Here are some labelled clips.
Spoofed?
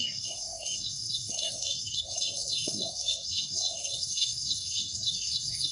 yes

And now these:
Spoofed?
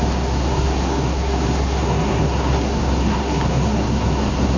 yes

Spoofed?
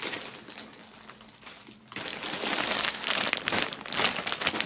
no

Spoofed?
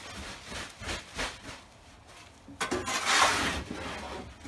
no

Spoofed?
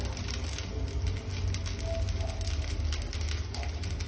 no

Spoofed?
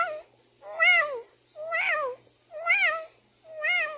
no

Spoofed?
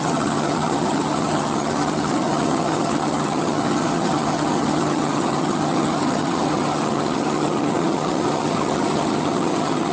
yes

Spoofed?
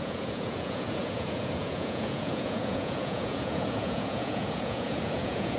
yes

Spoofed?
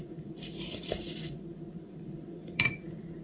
yes